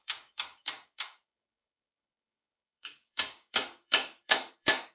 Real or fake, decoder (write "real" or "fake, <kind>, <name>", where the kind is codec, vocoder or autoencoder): fake, codec, DAC